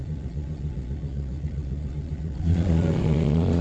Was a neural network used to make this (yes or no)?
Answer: yes